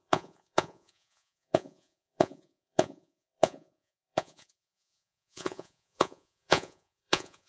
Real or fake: fake